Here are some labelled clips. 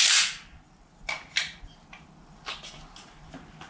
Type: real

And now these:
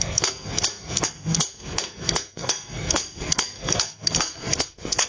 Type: fake